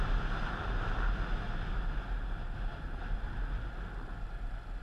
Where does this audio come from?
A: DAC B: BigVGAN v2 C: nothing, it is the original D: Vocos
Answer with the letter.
C